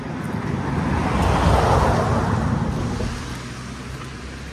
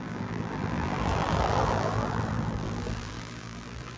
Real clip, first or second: first